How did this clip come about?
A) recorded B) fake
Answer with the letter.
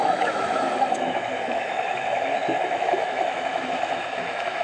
B